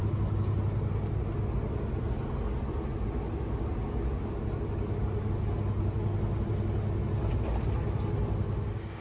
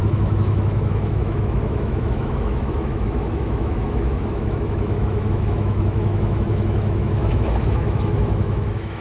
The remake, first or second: second